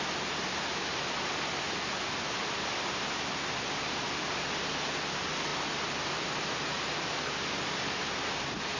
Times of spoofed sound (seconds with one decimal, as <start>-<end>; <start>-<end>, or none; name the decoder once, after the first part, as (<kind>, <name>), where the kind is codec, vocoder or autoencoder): 5.5-6.1 (vocoder, BigVGAN v2)